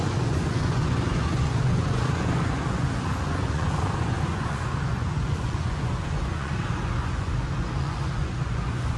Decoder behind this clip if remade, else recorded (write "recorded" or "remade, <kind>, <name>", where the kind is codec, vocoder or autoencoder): remade, vocoder, Vocos